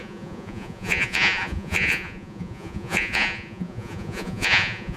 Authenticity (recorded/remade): remade